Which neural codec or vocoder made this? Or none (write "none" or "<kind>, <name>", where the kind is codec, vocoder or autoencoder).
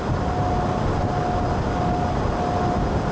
none